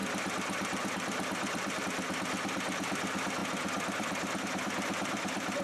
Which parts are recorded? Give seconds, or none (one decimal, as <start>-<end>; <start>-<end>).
none